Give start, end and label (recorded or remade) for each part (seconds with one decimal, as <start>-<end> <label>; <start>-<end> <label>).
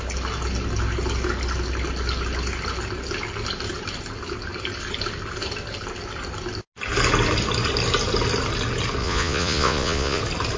0.0-9.0 recorded; 9.0-10.2 remade; 10.2-10.6 recorded